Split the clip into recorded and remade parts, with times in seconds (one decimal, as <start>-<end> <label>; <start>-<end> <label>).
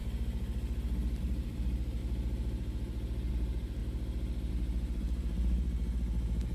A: 0.0-1.2 recorded; 1.2-2.0 remade; 2.0-3.3 recorded; 3.3-3.8 remade; 3.8-4.5 recorded; 4.5-6.5 remade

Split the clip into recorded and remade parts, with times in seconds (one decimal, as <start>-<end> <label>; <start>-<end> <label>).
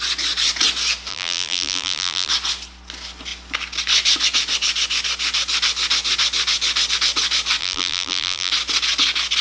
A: 0.0-1.1 recorded; 1.1-2.3 remade; 2.3-7.6 recorded; 7.6-8.5 remade; 8.5-9.4 recorded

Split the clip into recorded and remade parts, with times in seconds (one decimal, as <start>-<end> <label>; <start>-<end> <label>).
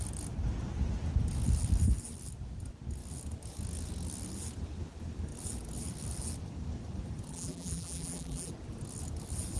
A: 0.0-7.3 recorded; 7.3-8.5 remade; 8.5-9.6 recorded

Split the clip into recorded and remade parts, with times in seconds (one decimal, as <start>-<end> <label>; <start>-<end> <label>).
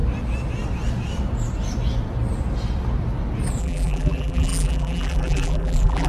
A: 0.0-3.6 recorded; 3.6-6.1 remade